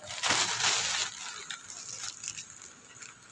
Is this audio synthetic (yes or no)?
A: no